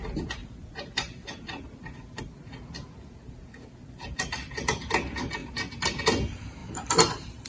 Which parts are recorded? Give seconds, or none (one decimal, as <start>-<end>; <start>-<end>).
0.0-0.4; 2.2-6.6